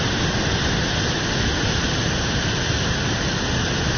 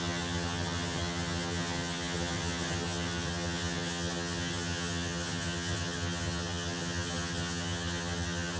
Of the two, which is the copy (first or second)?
second